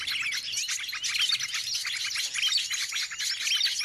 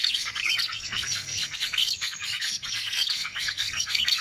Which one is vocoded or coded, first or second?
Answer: second